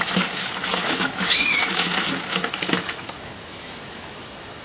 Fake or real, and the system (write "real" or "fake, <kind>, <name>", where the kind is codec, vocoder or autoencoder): fake, autoencoder, DAC-VAE